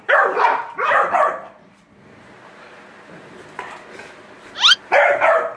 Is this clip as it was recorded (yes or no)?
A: yes